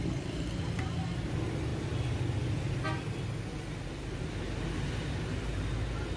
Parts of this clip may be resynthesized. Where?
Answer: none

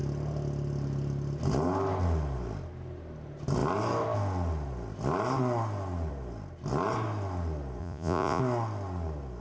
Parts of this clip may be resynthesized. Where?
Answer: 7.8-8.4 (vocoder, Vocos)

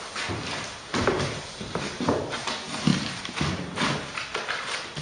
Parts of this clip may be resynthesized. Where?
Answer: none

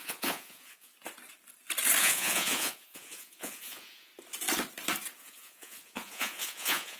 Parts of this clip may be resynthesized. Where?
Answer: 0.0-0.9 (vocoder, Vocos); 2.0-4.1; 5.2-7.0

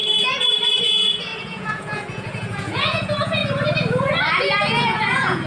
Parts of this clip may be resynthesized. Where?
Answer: 0.8-3.4 (vocoder, Vocos); 4.6-5.5

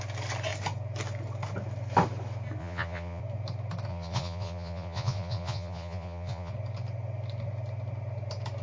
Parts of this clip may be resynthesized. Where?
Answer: 2.6-3.2 (vocoder, Vocos); 3.9-6.5

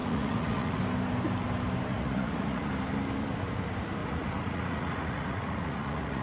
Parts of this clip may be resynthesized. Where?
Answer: 0.0-0.8 (vocoder, Vocos); 1.9-2.7; 4.0-6.2